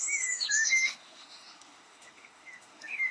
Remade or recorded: remade